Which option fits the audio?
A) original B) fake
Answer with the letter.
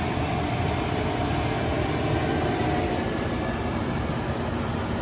A